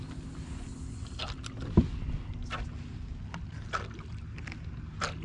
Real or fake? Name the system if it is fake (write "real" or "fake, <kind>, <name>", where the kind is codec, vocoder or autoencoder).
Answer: real